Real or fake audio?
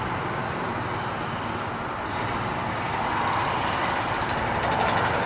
real